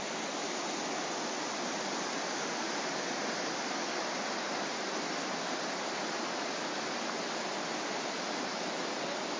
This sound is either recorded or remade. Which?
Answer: recorded